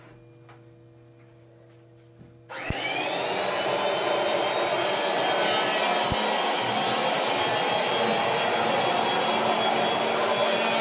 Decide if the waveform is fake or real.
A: real